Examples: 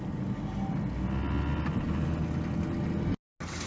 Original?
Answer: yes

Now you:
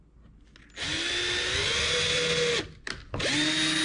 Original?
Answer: yes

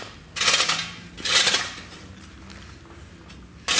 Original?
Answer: yes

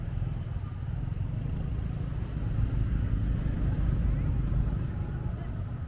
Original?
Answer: yes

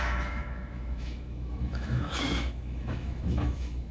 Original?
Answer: no